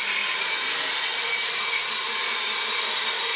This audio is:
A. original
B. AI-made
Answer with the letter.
B